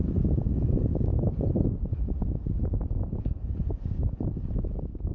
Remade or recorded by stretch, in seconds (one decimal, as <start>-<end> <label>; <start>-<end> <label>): 0.0-1.1 recorded; 1.1-4.2 remade; 4.2-5.1 recorded